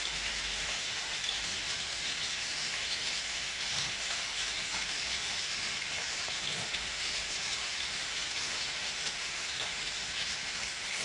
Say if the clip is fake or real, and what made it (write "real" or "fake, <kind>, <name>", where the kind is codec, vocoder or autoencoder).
fake, autoencoder, DAC-VAE